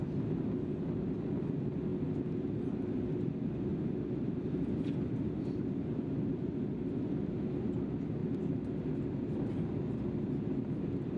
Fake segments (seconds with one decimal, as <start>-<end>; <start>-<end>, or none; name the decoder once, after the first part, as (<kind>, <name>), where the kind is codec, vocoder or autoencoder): 3.7-5.4 (vocoder, BigVGAN v2); 8.2-9.2